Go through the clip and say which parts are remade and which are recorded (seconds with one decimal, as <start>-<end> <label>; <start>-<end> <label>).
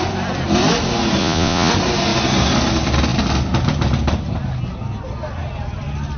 0.0-1.2 recorded; 1.2-1.7 remade; 1.7-6.2 recorded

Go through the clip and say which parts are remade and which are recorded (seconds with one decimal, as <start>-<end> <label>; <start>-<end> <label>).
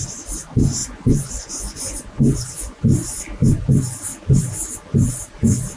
0.0-0.8 recorded; 0.8-3.2 remade; 3.2-5.8 recorded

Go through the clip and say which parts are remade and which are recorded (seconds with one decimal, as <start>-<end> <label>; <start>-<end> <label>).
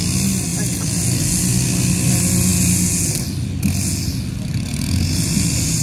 0.0-5.8 recorded